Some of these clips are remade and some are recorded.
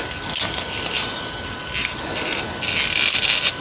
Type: recorded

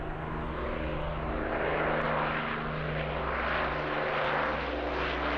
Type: recorded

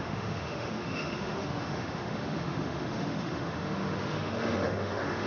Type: remade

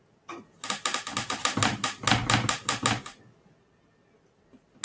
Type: recorded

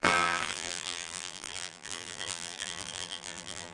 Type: remade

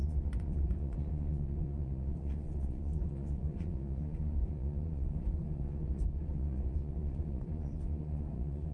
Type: remade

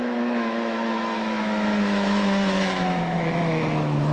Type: remade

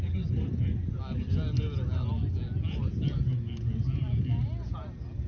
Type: recorded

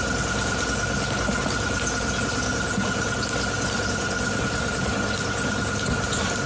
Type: recorded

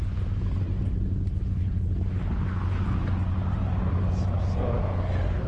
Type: recorded